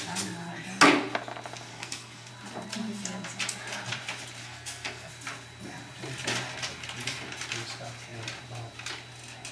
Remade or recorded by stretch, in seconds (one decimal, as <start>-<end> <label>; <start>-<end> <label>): 0.0-1.7 recorded; 1.7-2.3 remade; 2.3-4.4 recorded; 4.4-5.1 remade; 5.1-9.5 recorded